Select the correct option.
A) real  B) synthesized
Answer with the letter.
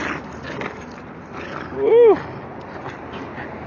A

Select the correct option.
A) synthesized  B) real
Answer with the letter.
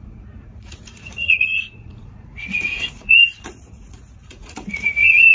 A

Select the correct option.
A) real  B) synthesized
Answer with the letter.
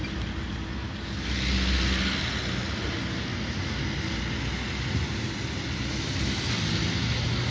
A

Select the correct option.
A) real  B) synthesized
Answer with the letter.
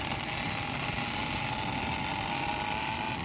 A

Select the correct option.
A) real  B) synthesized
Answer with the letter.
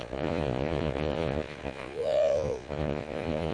B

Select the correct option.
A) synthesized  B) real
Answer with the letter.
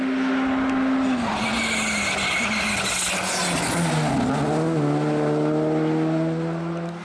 B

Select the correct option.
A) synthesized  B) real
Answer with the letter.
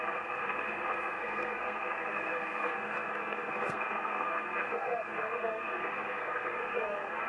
A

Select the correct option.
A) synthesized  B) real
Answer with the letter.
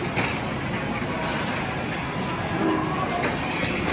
B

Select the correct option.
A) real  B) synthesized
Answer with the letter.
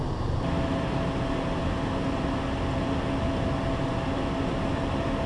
A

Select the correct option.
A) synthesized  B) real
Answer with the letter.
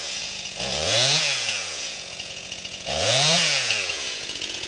A